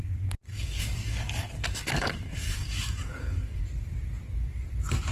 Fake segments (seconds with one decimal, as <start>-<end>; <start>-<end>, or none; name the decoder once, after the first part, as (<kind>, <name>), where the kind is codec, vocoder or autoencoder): 0.5-3.6 (codec, DAC)